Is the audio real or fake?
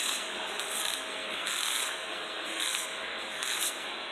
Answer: fake